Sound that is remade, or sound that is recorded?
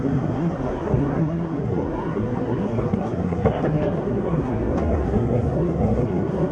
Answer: remade